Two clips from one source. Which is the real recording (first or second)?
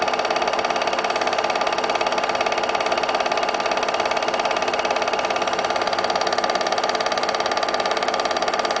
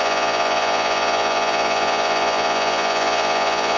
first